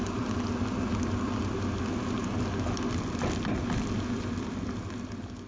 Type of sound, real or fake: real